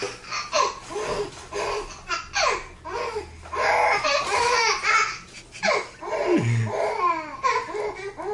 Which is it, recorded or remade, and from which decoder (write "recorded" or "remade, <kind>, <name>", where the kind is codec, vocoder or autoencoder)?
recorded